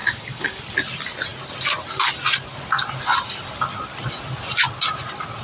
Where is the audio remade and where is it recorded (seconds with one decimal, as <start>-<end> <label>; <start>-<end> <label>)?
0.0-0.6 remade; 0.6-5.4 recorded